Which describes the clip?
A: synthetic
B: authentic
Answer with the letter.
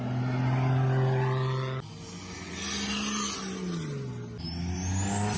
B